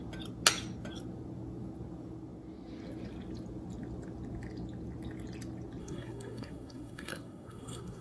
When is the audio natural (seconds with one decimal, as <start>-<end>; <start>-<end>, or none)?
0.0-5.8